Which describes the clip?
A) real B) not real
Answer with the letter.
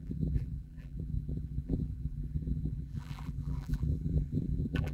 B